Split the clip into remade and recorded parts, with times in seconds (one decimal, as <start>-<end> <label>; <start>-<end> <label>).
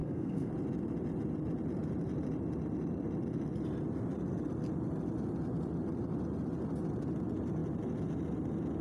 0.0-0.5 remade; 0.5-8.8 recorded